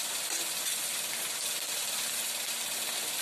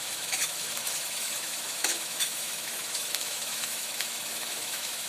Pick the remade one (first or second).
second